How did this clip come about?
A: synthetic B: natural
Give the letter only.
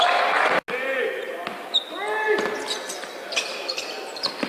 B